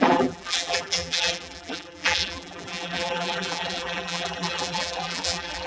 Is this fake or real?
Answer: fake